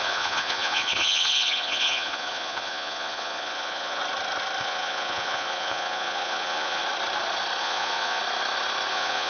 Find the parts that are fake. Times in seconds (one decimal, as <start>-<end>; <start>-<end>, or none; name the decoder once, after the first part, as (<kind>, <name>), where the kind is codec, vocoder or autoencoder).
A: 0.0-4.0 (vocoder, Vocos); 4.6-6.8; 7.6-8.2; 8.9-9.3